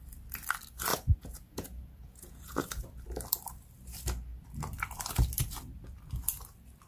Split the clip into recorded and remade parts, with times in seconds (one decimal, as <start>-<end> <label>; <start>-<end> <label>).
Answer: 0.0-0.9 recorded; 0.9-2.8 remade; 2.8-6.9 recorded